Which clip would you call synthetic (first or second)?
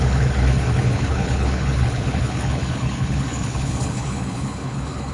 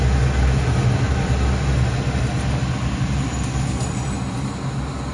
first